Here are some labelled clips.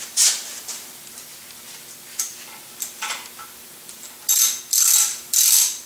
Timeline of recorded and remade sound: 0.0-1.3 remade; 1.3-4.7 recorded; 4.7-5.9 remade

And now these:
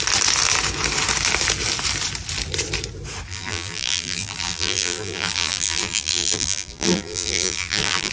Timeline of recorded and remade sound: 0.0-3.3 recorded; 3.3-8.1 remade

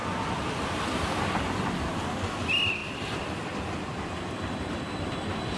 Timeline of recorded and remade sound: 0.0-1.3 remade; 1.3-2.8 recorded; 2.8-5.0 remade; 5.0-5.6 recorded

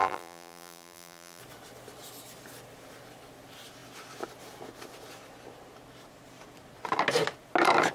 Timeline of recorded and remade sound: 0.0-1.4 remade; 1.4-7.9 recorded